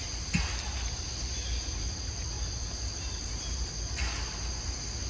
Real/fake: real